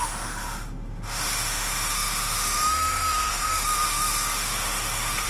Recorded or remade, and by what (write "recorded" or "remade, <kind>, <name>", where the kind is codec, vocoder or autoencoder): remade, autoencoder, DAC-VAE